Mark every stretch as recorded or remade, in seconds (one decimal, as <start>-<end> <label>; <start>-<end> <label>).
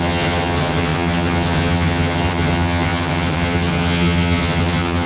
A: 0.0-5.1 remade